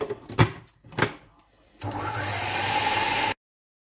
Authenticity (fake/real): real